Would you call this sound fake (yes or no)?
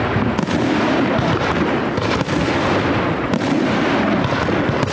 no